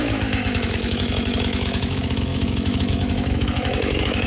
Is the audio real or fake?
fake